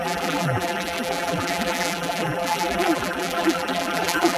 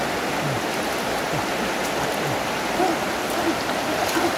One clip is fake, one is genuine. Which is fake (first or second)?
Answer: first